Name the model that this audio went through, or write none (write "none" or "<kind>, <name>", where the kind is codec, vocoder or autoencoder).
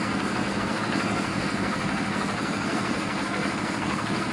codec, SNAC